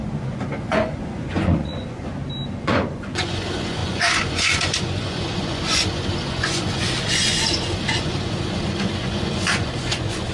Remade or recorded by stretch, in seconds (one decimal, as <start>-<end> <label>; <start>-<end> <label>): 0.0-2.1 remade; 2.1-2.6 recorded; 2.6-10.3 remade